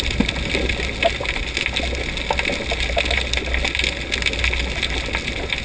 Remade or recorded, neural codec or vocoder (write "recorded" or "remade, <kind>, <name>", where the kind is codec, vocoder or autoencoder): recorded